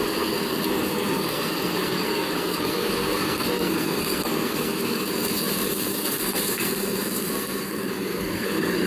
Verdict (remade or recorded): remade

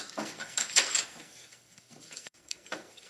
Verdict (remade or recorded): remade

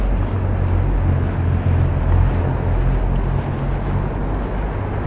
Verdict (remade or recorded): recorded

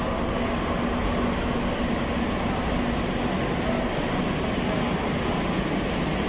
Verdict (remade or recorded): recorded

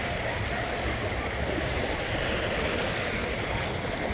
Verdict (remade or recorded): recorded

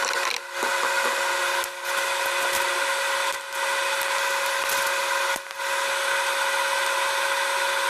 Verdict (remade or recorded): recorded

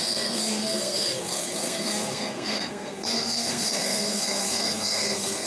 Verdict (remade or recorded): remade